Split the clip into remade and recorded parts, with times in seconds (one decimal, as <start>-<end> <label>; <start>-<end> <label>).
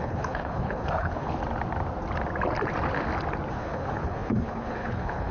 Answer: 0.0-1.4 remade; 1.4-3.5 recorded; 3.5-5.3 remade